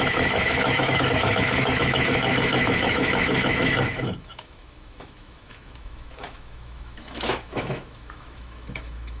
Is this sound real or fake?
fake